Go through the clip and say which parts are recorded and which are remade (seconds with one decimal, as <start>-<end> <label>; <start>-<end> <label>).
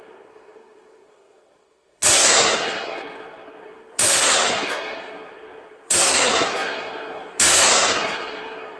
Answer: 0.0-8.8 remade